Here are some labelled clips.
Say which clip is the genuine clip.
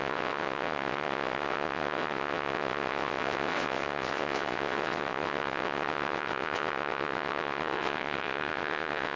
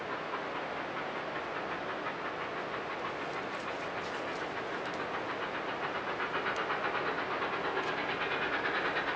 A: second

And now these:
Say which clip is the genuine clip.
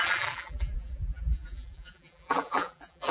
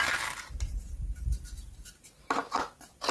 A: second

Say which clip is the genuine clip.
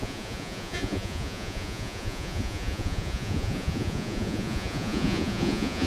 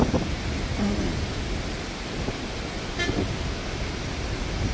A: second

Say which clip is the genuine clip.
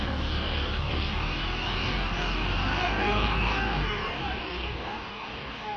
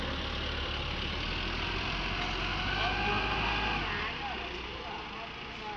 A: second